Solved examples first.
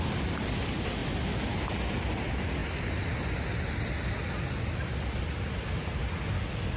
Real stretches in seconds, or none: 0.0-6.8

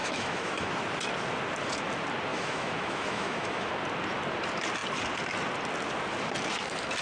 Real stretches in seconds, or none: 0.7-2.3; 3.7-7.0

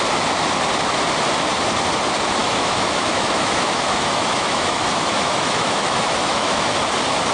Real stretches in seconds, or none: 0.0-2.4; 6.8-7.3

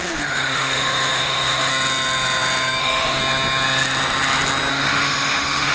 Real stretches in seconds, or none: 1.7-2.8; 3.2-4.7